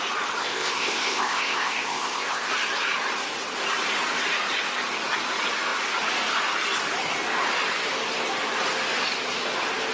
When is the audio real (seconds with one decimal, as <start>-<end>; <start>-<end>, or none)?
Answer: 0.0-0.4; 2.5-9.9